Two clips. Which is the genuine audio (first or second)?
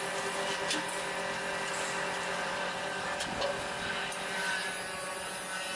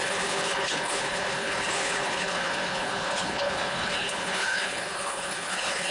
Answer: first